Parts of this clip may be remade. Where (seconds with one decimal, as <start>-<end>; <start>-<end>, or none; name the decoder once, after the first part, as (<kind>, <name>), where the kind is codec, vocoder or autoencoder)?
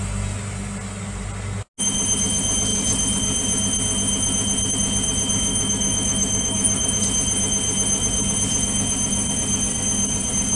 5.5-7.0 (autoencoder, DAC-VAE)